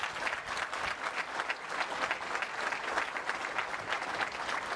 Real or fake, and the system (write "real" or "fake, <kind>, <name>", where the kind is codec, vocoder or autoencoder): real